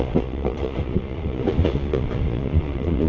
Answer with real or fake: fake